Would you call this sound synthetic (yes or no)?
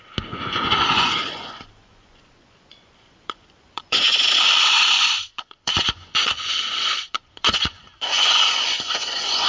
yes